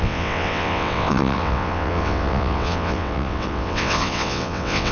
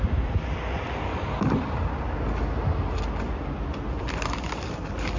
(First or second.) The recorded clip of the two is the second